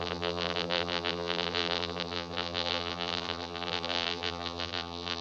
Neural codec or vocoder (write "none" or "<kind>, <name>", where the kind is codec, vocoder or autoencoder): vocoder, BigVGAN v2